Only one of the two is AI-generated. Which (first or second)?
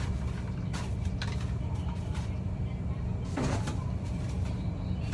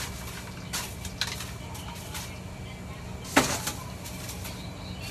first